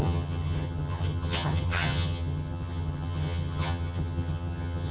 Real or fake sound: fake